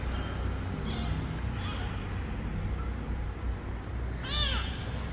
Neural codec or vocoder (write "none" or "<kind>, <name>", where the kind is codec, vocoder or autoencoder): none